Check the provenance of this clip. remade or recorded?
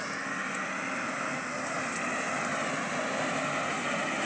recorded